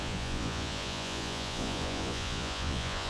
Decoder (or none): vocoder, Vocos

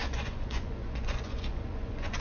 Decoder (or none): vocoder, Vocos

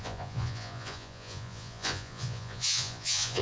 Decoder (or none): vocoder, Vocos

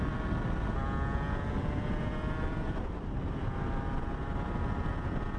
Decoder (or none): none